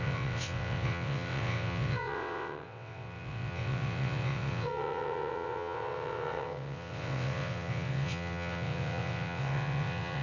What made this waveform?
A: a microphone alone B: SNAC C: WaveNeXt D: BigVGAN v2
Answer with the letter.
C